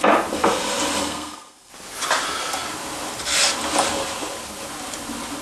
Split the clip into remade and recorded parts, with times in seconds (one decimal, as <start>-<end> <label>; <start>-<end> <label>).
0.0-1.0 recorded; 1.0-1.7 remade; 1.7-5.4 recorded